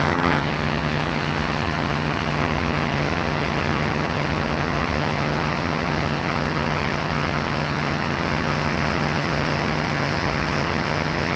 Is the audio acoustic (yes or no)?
no